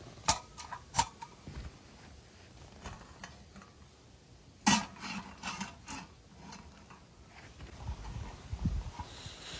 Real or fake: real